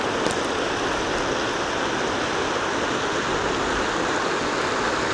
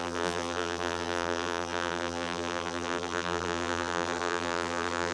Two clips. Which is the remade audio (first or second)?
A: second